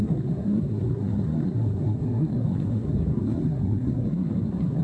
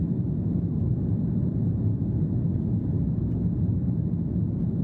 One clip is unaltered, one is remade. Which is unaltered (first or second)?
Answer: second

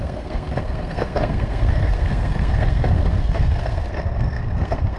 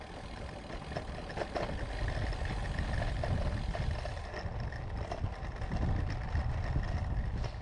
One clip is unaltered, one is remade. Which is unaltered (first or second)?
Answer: second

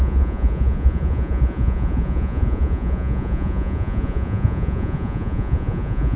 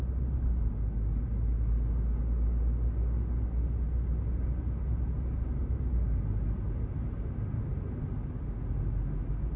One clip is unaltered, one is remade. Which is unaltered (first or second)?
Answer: second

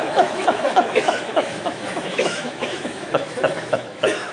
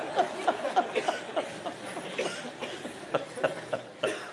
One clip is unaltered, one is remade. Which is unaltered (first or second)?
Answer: second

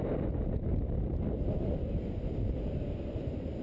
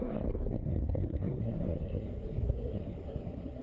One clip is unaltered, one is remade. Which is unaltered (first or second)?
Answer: first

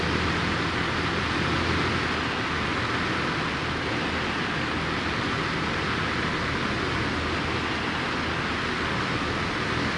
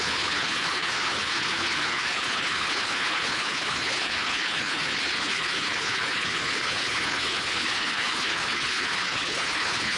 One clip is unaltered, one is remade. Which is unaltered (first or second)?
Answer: first